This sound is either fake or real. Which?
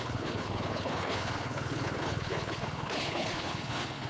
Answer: fake